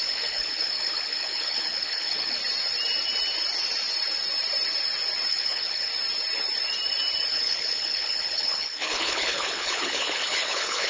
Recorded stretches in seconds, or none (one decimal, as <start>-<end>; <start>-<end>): 2.4-5.3; 5.9-7.3